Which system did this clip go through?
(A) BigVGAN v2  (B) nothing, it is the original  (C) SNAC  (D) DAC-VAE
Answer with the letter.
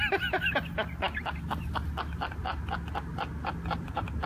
B